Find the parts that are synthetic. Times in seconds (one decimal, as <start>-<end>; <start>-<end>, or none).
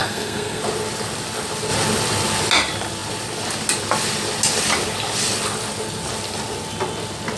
0.0-0.6